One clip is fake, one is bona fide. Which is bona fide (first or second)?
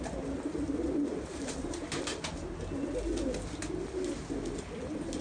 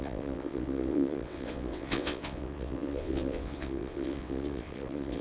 first